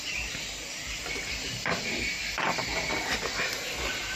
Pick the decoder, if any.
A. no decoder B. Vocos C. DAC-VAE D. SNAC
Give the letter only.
A